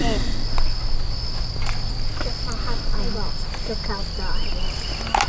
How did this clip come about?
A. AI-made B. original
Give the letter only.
B